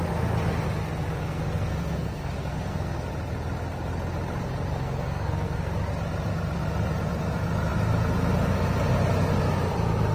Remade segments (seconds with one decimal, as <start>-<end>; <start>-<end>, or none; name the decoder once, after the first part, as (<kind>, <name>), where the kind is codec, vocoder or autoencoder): 1.2-3.1 (codec, SNAC); 4.7-5.7